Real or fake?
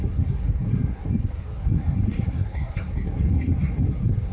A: fake